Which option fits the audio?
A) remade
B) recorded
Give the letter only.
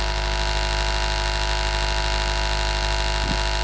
B